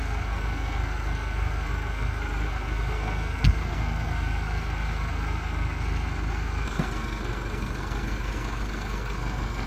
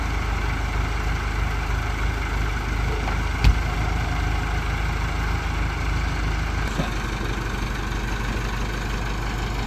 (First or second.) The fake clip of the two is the first